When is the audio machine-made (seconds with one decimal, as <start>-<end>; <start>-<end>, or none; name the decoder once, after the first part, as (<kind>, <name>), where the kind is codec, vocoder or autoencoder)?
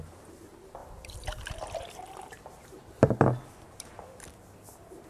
0.8-3.9 (vocoder, BigVGAN v2)